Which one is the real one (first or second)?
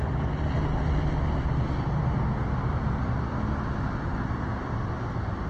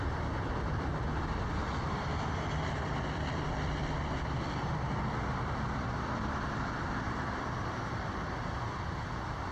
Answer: first